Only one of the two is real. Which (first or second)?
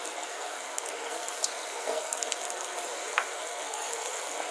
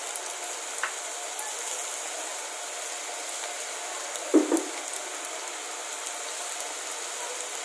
second